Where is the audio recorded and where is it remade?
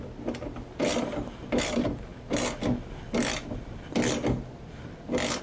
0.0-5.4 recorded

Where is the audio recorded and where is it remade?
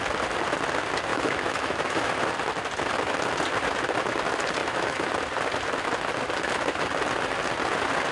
0.0-1.1 recorded; 1.1-2.1 remade; 2.1-4.6 recorded; 4.6-5.1 remade; 5.1-8.1 recorded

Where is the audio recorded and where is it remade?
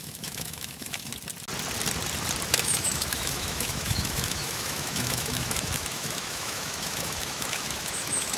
0.0-1.1 remade; 1.1-2.5 recorded; 2.5-8.4 remade